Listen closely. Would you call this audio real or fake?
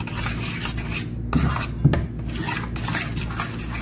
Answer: real